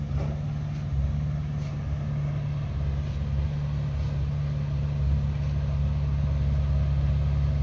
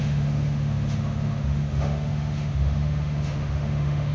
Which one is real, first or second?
first